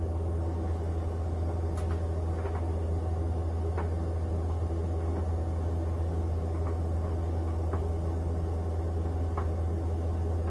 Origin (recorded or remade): recorded